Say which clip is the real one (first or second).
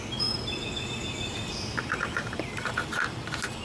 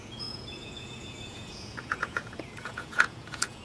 first